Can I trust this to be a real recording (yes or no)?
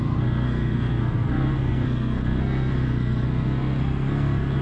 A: no